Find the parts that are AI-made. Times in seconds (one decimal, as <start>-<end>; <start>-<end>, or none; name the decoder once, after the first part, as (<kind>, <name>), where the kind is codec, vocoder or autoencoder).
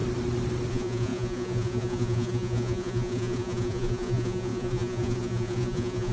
0.7-6.1 (vocoder, Vocos)